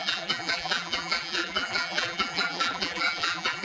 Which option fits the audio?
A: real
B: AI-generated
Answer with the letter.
B